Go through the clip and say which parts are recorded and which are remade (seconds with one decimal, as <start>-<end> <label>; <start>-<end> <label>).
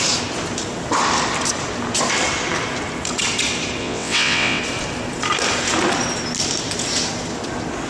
0.0-3.8 recorded; 3.8-4.6 remade; 4.6-7.9 recorded